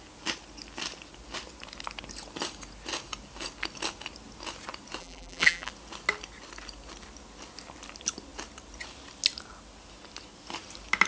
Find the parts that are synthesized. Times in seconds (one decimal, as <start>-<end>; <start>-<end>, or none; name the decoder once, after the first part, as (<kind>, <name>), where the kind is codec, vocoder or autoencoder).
5.0-5.7 (vocoder, BigVGAN v2)

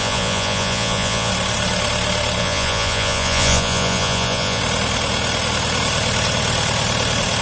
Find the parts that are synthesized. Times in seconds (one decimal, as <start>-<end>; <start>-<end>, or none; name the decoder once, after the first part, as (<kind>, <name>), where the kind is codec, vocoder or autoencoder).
0.0-1.3 (vocoder, Vocos); 2.4-4.6

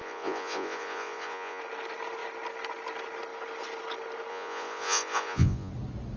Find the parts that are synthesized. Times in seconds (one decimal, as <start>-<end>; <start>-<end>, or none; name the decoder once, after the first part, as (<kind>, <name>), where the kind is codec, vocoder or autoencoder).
0.0-1.6 (vocoder, Vocos); 4.3-5.7

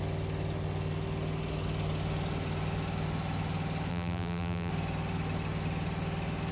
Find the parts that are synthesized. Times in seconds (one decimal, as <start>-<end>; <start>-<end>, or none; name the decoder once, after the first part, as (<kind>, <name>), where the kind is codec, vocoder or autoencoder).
3.9-4.7 (vocoder, BigVGAN v2)

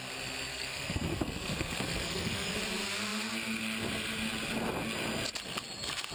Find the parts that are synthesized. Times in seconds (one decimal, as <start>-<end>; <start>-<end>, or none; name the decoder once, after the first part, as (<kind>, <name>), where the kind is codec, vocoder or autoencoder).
0.5-2.5 (codec, SNAC)

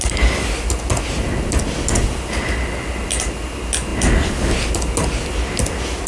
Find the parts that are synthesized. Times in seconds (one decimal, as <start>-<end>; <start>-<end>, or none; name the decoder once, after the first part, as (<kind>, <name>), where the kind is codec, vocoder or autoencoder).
none